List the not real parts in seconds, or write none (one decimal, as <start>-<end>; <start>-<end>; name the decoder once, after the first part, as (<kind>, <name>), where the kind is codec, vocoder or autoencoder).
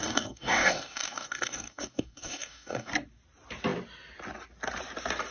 0.0-2.9 (codec, DAC)